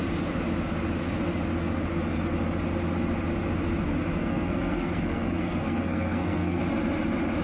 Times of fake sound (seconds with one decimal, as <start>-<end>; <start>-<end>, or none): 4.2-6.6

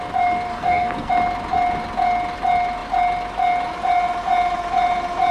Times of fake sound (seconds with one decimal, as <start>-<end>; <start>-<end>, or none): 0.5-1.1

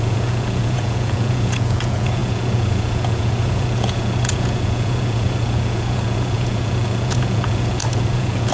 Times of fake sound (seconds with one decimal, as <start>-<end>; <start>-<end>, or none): 0.0-8.5